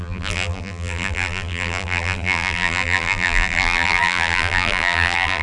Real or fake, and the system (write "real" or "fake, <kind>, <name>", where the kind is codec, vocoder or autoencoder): fake, vocoder, BigVGAN v2